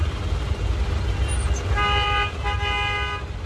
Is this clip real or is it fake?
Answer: real